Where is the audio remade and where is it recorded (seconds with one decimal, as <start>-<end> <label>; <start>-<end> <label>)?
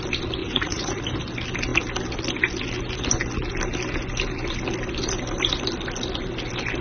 0.0-0.4 recorded; 0.4-1.0 remade; 1.0-6.8 recorded